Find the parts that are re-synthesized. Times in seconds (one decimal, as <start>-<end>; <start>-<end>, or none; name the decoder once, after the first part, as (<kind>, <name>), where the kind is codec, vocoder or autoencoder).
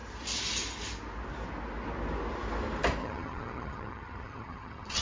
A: 3.0-5.0 (vocoder, HiFi-GAN)